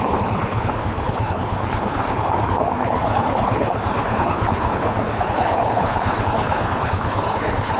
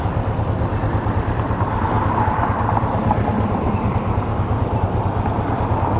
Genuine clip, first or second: second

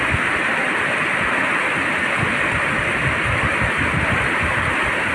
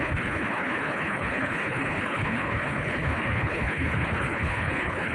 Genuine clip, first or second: first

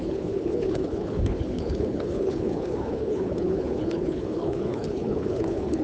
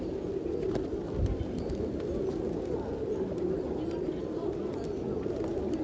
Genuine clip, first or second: second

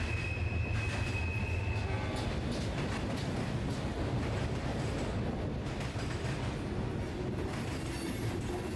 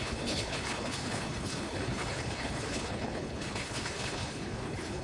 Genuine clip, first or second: first